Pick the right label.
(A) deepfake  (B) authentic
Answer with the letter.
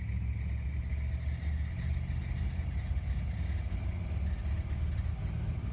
B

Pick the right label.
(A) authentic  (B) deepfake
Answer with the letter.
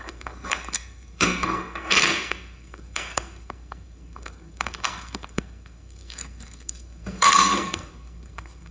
B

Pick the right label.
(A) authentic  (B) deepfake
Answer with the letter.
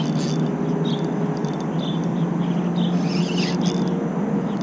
A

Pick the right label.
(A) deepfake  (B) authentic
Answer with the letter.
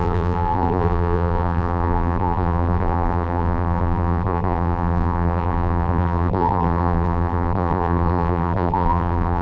A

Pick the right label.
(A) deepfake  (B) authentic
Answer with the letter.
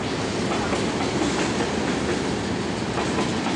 B